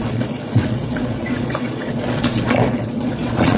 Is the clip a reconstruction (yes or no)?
yes